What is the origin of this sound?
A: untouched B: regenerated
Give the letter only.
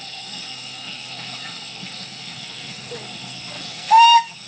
B